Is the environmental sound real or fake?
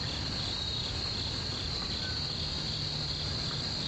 real